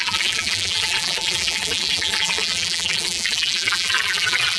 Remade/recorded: remade